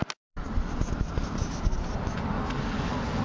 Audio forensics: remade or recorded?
recorded